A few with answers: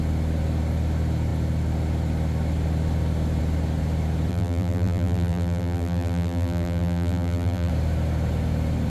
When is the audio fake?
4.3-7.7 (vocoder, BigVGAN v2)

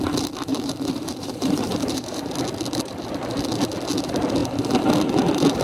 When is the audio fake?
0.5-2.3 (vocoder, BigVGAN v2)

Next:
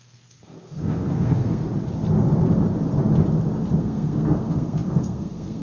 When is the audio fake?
0.0-1.6 (codec, SNAC); 3.8-5.6